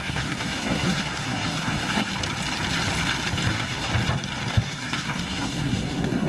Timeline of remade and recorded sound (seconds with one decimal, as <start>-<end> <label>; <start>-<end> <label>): 0.0-2.1 remade; 2.1-3.5 recorded; 3.5-3.9 remade; 3.9-4.5 recorded; 4.5-6.3 remade